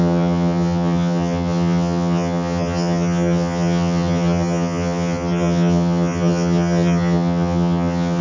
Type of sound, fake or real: fake